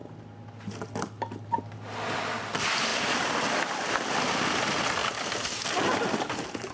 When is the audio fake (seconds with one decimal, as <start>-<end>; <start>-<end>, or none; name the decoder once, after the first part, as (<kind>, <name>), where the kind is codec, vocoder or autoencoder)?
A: none